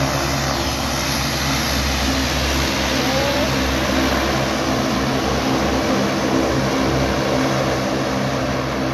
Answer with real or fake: real